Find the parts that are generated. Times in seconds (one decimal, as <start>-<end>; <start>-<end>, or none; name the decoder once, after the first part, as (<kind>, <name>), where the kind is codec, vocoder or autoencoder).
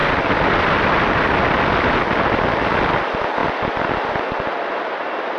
none